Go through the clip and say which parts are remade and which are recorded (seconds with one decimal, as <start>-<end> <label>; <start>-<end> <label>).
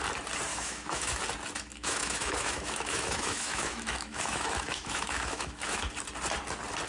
0.0-0.5 recorded; 0.5-1.2 remade; 1.2-1.7 recorded; 1.7-5.8 remade; 5.8-6.9 recorded